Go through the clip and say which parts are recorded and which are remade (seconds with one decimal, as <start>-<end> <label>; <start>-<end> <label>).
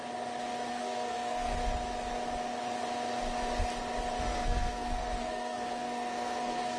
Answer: 0.0-0.7 recorded; 0.7-1.5 remade; 1.5-4.2 recorded; 4.2-6.8 remade